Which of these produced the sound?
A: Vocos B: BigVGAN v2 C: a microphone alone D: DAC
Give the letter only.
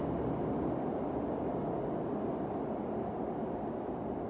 C